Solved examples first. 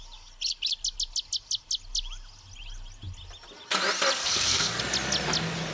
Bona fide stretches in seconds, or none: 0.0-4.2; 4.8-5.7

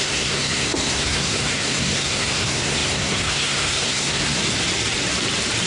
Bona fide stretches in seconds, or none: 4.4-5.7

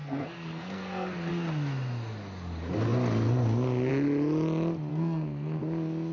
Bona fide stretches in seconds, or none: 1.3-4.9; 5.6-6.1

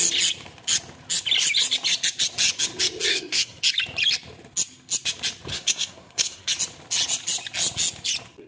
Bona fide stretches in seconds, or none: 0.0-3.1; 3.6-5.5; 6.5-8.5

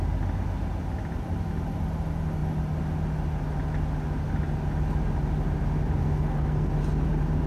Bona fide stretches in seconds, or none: 0.0-6.0; 6.7-7.5

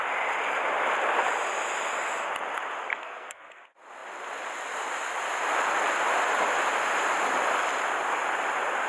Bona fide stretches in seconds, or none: 0.0-2.9; 3.6-8.9

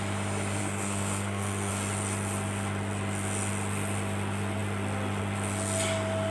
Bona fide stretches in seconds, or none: 0.0-0.6; 1.7-6.3